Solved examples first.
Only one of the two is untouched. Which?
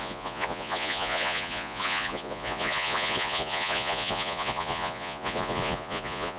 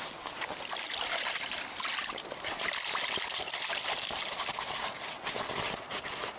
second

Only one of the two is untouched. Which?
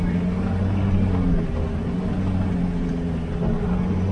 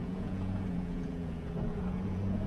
first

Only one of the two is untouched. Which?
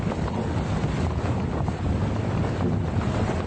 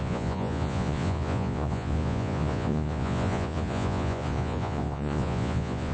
first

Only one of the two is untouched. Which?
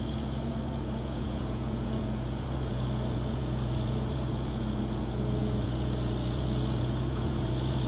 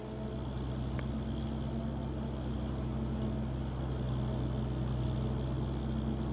second